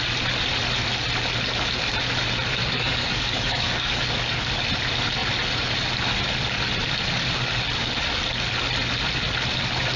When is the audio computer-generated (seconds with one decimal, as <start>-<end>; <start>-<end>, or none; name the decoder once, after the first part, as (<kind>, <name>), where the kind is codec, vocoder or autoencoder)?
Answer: 2.6-4.5 (codec, DAC)